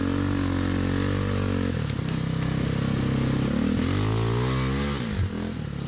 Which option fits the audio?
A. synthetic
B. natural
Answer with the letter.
B